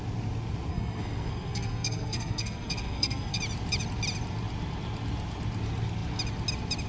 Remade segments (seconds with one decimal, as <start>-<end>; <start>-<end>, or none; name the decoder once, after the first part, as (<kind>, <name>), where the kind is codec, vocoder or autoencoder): 0.7-3.4 (codec, SNAC)

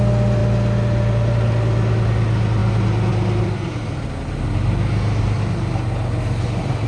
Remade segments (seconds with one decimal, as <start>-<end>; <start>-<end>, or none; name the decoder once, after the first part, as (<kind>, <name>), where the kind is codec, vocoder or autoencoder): none

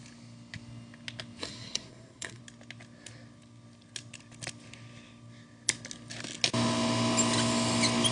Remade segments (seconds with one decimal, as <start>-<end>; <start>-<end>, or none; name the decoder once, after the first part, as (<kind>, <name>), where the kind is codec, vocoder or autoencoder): 1.4-2.4 (codec, SNAC)

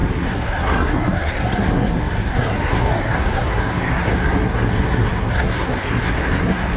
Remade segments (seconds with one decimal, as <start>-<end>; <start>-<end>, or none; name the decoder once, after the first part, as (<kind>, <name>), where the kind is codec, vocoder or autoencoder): 0.0-6.8 (codec, SNAC)

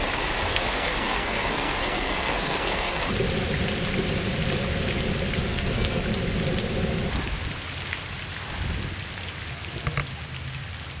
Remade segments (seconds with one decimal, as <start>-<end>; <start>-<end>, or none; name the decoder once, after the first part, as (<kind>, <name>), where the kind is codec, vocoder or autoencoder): 0.5-3.0 (codec, SNAC); 5.5-6.0

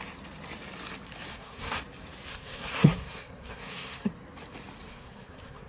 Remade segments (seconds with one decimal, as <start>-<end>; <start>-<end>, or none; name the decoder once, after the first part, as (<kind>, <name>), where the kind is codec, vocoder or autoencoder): 1.3-1.8 (codec, SNAC); 2.3-4.1; 4.9-5.7

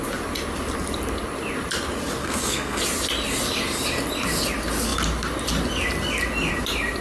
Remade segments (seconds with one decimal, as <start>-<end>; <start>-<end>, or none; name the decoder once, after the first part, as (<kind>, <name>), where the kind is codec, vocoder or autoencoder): 2.2-2.8 (codec, SNAC)